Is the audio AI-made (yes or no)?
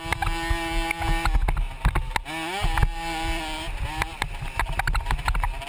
no